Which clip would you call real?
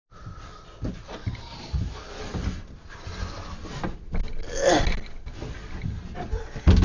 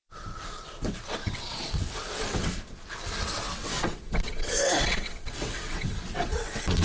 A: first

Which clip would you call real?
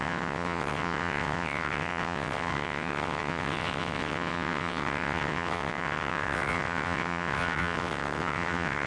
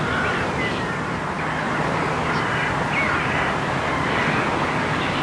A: second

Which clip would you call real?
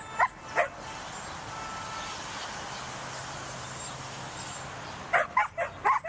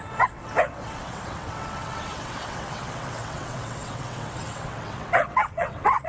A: first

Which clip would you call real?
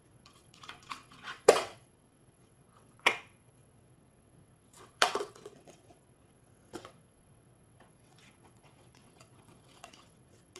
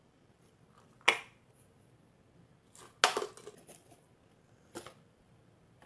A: second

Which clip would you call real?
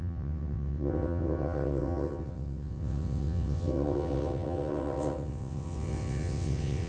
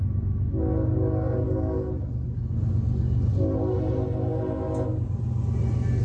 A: second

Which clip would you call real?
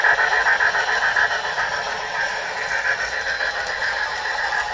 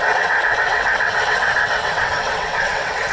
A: first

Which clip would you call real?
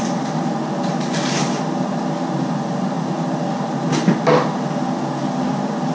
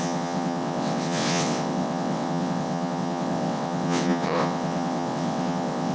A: first